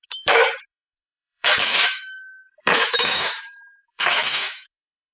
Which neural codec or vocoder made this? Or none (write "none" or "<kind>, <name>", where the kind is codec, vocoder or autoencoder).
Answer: autoencoder, DAC-VAE